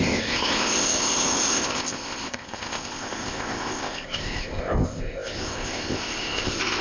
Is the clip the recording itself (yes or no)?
no